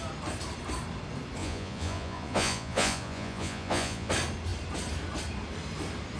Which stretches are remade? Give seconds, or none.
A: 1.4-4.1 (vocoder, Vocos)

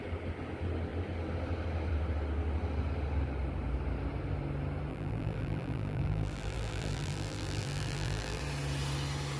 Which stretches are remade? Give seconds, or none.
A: 4.9-8.4 (vocoder, BigVGAN v2)

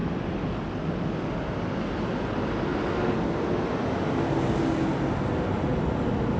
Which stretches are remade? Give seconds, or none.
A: none

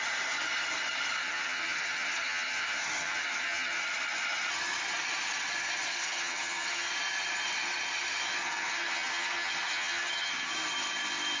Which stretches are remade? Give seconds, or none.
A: 1.2-3.8 (vocoder, HiFi-GAN); 5.9-6.9; 8.4-10.5